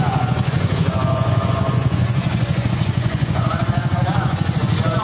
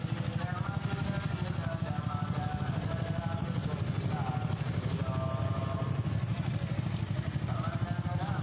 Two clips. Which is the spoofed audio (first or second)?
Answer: first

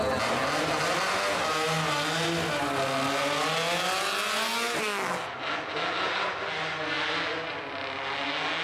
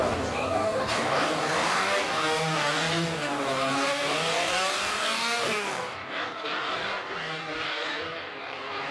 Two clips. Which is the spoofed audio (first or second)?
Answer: second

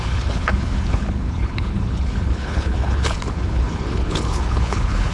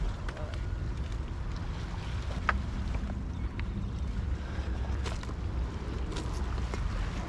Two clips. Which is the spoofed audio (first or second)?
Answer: first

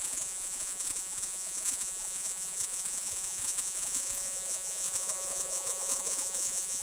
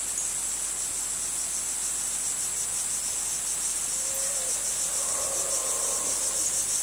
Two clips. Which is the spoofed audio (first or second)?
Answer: first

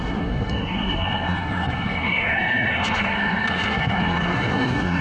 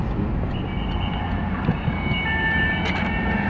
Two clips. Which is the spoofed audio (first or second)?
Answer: first